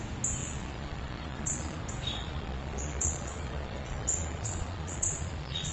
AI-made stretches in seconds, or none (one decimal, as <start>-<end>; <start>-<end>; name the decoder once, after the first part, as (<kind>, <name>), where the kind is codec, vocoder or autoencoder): 0.4-1.8 (vocoder, Vocos); 2.2-5.7